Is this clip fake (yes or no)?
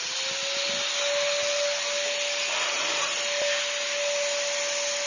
no